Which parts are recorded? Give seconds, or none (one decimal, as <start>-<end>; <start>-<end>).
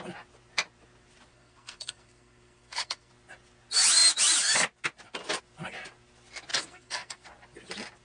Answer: 0.0-1.3; 3.1-6.5; 7.3-8.0